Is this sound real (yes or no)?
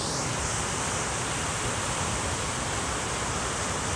no